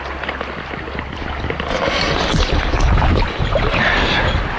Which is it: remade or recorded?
recorded